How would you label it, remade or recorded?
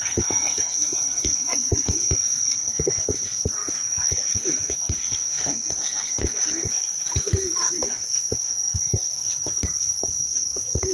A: remade